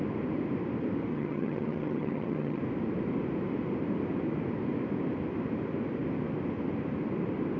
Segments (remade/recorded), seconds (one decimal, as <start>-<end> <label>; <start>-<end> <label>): 0.0-1.1 recorded; 1.1-2.6 remade; 2.6-7.6 recorded